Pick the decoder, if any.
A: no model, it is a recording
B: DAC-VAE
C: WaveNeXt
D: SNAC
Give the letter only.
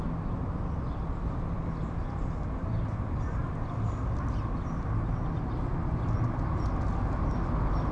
A